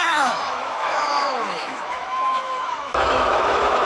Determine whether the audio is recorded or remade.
remade